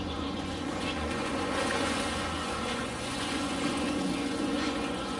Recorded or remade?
remade